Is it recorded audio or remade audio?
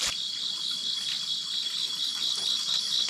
remade